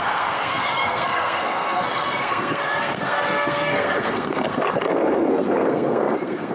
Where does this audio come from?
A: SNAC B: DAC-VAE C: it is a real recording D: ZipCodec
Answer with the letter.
A